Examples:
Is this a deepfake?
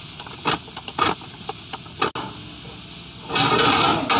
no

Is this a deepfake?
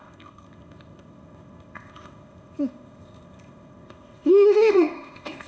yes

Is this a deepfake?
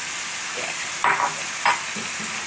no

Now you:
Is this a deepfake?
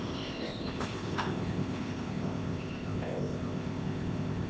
yes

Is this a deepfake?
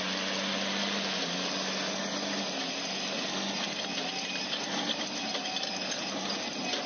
no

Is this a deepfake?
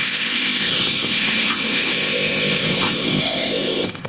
yes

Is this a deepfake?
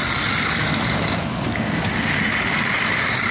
no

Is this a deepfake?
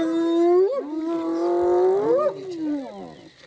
no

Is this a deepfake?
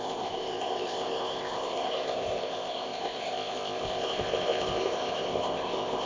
yes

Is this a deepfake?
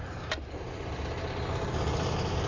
no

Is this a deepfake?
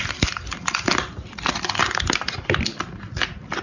no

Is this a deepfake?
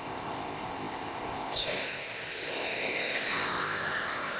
yes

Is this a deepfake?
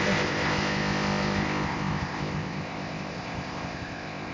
yes